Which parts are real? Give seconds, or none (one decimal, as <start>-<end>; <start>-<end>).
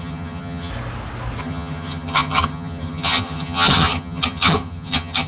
0.7-1.4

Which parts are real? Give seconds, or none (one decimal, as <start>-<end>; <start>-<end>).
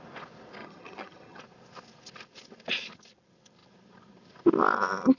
0.0-0.6; 1.4-5.2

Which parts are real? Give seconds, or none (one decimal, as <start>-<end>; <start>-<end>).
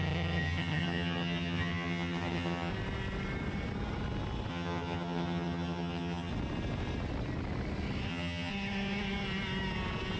2.7-4.5; 6.3-8.1; 8.5-10.2